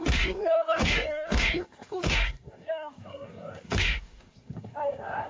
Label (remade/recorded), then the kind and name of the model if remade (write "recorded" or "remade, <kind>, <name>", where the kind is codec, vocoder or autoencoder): remade, codec, SNAC